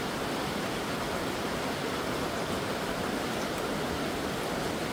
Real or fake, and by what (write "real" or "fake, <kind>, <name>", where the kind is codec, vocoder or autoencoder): real